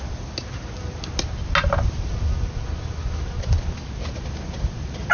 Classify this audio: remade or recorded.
recorded